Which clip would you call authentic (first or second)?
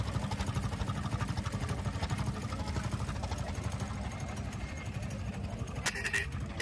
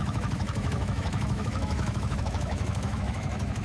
first